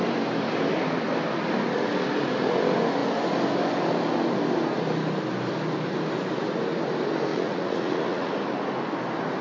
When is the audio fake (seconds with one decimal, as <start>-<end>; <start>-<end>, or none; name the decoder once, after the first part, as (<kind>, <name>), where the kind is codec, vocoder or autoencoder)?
7.3-8.3 (vocoder, Vocos)